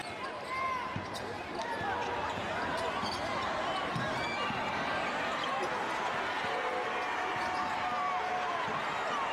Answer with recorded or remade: recorded